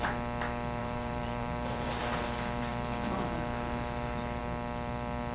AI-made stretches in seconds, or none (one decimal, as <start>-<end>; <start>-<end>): 0.8-2.0